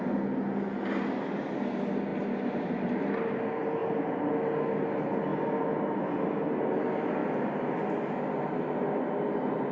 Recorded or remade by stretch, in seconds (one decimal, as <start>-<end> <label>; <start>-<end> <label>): 0.0-9.7 recorded